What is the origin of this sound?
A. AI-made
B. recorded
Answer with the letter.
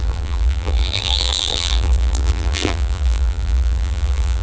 A